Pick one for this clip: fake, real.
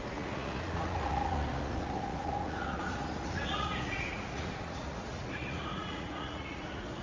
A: fake